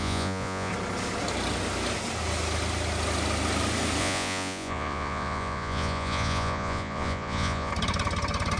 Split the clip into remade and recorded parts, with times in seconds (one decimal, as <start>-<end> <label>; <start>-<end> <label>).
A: 0.0-0.7 remade; 0.7-4.0 recorded; 4.0-7.7 remade; 7.7-8.6 recorded